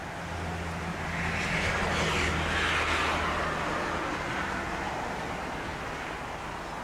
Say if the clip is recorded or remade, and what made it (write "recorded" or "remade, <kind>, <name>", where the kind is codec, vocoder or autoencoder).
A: recorded